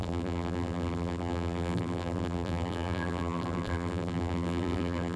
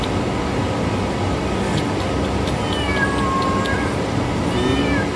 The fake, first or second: first